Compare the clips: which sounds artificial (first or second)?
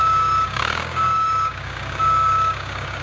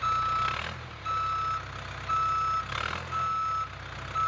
first